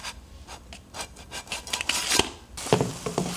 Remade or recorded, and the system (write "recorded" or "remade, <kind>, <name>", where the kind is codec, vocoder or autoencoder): recorded